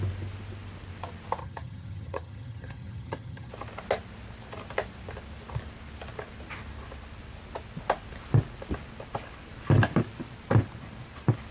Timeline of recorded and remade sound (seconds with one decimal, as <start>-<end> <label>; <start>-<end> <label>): 0.0-1.4 recorded; 1.4-3.5 remade; 3.5-11.5 recorded